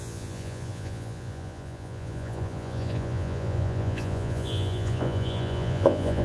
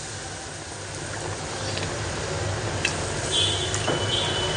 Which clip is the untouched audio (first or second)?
second